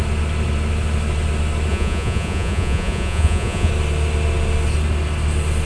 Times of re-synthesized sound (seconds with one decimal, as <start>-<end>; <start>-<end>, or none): 1.7-3.7